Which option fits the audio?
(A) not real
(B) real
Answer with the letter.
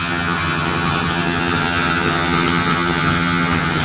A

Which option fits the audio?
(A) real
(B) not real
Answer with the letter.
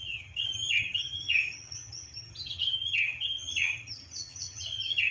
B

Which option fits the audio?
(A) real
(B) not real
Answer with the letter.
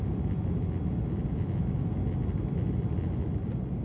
A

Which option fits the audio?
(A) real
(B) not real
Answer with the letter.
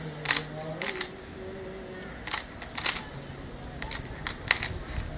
A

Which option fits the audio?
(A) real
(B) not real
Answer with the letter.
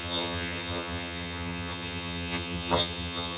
B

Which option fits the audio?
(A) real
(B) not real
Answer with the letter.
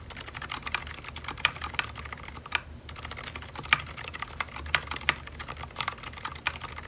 A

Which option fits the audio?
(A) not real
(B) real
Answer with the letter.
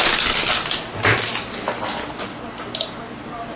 B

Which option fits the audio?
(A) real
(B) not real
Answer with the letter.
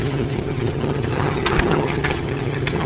B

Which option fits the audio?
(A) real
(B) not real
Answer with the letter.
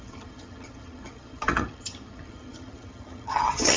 B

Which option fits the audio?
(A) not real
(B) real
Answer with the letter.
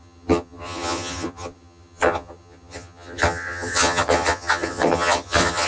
A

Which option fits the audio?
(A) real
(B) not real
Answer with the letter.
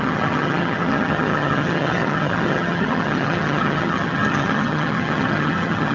B